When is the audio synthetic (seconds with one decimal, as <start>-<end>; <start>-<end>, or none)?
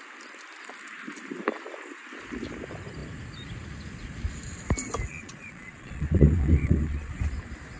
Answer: 5.1-7.1